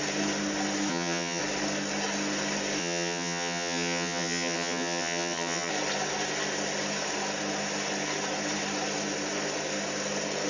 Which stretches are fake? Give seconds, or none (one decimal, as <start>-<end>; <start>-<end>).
0.9-1.4; 2.8-5.7